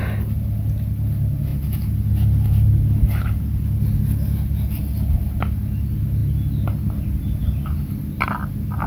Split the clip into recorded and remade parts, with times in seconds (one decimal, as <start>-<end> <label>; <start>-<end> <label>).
0.0-8.9 recorded